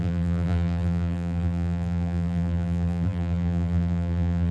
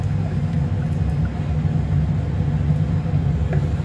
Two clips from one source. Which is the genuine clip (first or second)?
second